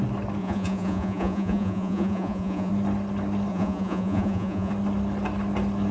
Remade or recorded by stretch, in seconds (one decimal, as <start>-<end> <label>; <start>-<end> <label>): 0.0-0.4 recorded; 0.4-2.7 remade; 2.7-3.5 recorded; 3.5-4.7 remade; 4.7-5.9 recorded